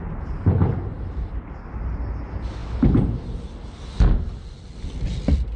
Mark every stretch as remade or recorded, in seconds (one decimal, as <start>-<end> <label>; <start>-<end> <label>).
0.0-5.6 recorded